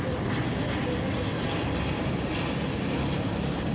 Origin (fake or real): real